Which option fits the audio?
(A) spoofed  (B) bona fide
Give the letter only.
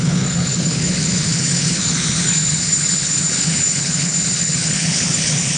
A